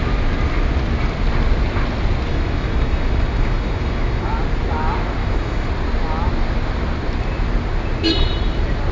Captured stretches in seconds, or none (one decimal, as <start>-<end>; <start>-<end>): 0.0-2.3; 4.3-5.2; 5.7-8.9

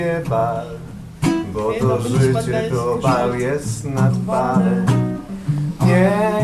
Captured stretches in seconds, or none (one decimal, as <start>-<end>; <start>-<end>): 0.0-5.7

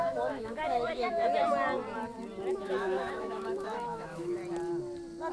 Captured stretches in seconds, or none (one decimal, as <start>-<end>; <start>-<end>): 1.3-2.5; 4.4-5.3

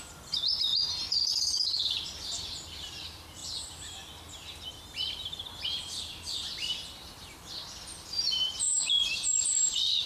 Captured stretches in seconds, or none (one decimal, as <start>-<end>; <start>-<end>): 0.0-10.1

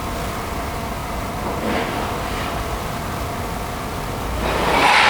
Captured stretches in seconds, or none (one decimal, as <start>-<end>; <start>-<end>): 0.0-5.1

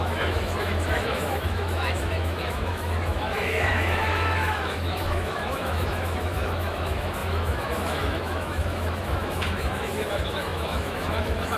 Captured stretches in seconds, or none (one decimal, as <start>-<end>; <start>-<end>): none

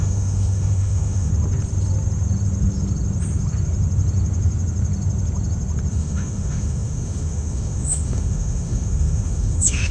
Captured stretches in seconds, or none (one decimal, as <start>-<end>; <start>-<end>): 1.3-5.9